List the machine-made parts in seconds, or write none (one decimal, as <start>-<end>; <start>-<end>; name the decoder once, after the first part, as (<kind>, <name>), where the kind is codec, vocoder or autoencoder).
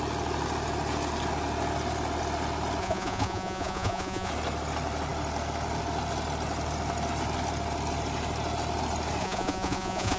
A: 2.8-4.3 (vocoder, Vocos); 9.2-10.2